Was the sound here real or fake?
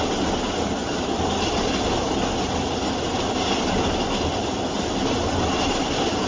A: real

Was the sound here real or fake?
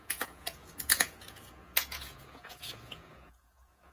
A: fake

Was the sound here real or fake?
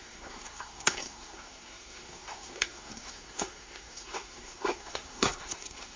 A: fake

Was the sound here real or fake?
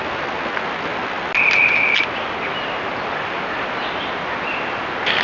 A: real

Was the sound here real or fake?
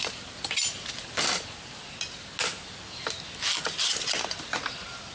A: real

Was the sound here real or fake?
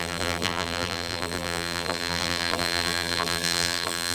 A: fake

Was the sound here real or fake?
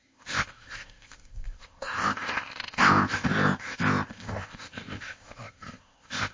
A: fake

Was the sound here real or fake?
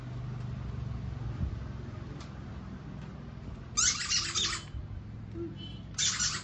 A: real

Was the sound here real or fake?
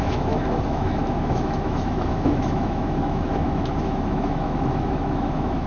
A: fake